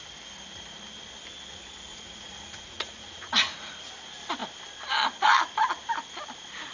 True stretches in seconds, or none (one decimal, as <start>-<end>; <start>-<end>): 0.0-1.9; 3.7-6.7